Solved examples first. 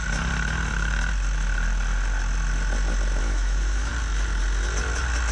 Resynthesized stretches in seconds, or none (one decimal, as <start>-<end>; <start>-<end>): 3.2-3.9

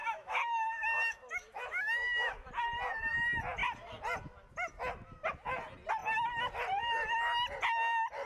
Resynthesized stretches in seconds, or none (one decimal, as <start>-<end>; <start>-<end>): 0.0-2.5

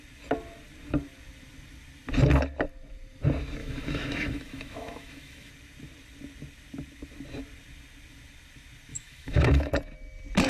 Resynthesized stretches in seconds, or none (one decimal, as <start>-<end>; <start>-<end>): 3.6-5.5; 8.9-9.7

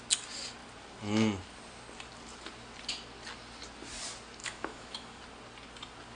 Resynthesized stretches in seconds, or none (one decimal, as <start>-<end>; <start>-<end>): 4.4-5.2

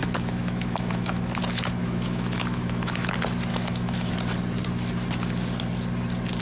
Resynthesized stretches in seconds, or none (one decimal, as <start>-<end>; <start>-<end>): 0.0-1.4; 1.8-3.1; 3.5-4.1

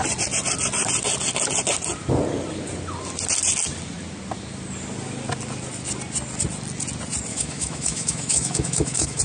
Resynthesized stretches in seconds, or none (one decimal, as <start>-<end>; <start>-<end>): 7.3-9.2